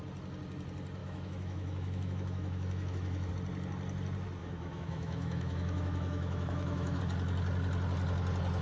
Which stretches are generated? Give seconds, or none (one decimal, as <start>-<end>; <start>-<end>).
1.0-3.3; 4.4-7.0